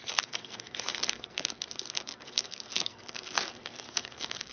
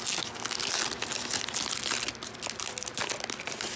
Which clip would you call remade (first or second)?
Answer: first